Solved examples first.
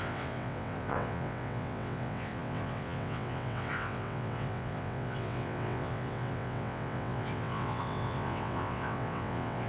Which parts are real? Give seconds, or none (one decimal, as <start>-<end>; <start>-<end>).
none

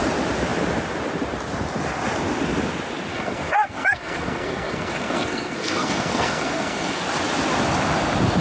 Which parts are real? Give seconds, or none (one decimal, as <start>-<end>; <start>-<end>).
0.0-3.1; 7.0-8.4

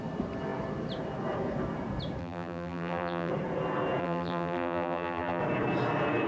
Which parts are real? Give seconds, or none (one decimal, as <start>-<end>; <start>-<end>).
0.0-2.2; 3.3-4.0; 5.4-6.3